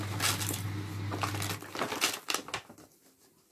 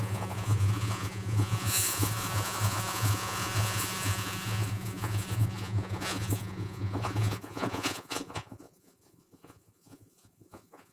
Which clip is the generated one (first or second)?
second